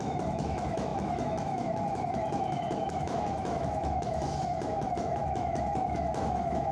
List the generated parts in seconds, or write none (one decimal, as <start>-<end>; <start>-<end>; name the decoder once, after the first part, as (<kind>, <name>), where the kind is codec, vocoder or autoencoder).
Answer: 0.0-6.7 (autoencoder, DAC-VAE)